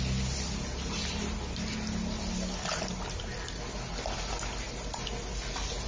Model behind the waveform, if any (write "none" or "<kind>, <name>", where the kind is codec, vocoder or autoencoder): none